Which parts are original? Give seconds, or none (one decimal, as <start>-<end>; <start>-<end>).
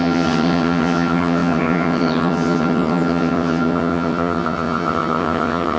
none